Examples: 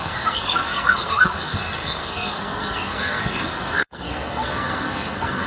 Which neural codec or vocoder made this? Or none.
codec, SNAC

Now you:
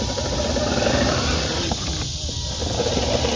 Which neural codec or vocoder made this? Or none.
none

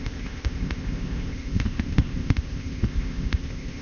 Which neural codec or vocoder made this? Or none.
codec, ZipCodec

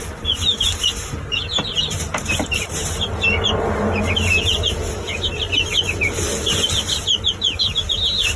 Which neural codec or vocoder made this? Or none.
none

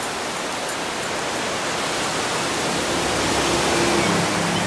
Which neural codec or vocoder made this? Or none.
none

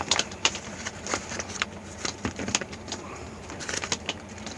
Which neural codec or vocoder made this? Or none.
vocoder, BigVGAN v2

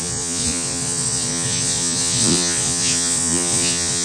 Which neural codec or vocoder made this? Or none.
vocoder, Vocos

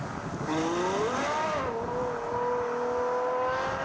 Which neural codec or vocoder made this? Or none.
none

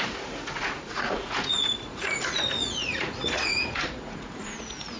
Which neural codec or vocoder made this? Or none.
vocoder, Vocos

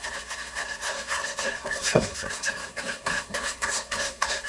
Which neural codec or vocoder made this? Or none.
codec, SNAC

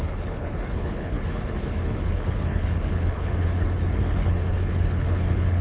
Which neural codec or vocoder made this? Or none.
codec, HILCodec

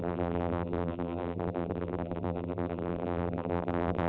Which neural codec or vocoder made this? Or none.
vocoder, BigVGAN v2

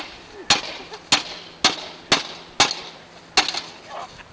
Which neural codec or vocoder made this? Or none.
none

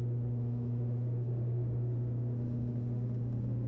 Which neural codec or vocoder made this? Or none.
autoencoder, DAC-VAE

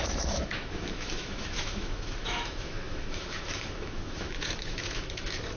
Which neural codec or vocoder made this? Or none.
autoencoder, DAC-VAE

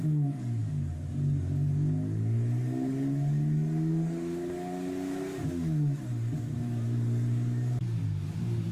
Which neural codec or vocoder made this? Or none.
codec, DAC